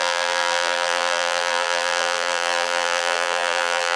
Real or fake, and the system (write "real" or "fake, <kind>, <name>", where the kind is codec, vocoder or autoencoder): fake, vocoder, BigVGAN v2